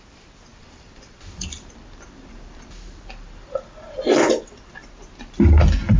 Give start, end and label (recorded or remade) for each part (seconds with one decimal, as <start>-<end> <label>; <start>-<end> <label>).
0.0-0.5 recorded; 0.5-4.1 remade; 4.1-6.0 recorded